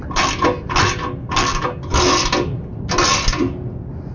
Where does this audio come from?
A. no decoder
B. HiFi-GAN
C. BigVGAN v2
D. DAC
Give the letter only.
A